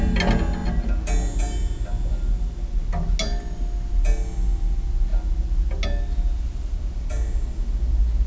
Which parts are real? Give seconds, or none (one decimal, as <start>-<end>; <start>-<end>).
0.0-8.3